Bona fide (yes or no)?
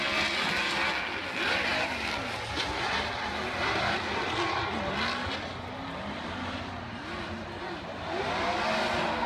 yes